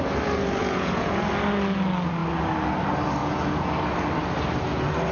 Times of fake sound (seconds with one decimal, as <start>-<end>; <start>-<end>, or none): 0.6-1.3; 3.2-3.7